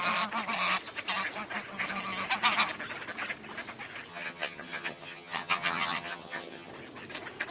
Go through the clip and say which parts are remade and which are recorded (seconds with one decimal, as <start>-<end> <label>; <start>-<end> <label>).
0.0-4.1 recorded; 4.1-6.7 remade; 6.7-7.5 recorded